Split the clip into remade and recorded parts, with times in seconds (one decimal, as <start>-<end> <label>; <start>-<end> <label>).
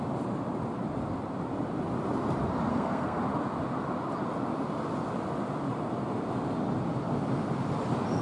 0.0-2.7 recorded; 2.7-3.2 remade; 3.2-8.2 recorded